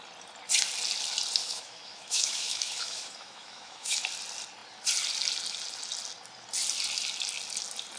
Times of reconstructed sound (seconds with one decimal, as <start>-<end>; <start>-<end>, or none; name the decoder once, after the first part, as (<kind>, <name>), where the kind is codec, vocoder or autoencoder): 1.4-4.0 (autoencoder, DAC-VAE)